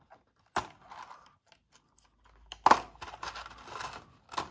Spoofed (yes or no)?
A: no